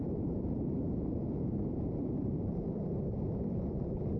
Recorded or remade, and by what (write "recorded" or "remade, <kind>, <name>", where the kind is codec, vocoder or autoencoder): remade, vocoder, BigVGAN v2